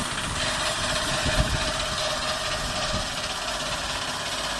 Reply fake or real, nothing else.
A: real